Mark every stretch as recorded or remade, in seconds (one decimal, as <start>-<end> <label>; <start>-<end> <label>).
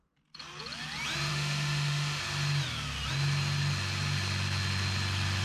0.0-1.3 recorded; 1.3-2.2 remade; 2.2-5.4 recorded